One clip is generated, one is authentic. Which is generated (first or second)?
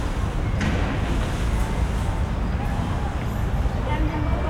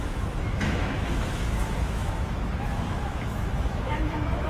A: second